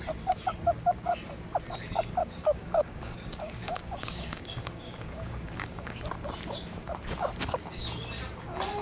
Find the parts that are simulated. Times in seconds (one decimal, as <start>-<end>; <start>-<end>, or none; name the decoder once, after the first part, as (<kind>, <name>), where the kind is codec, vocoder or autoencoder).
2.2-6.0 (codec, DAC)